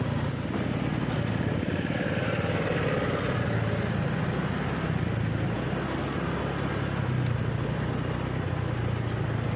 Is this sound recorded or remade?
recorded